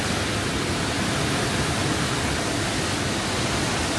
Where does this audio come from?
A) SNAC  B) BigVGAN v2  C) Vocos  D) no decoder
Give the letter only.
D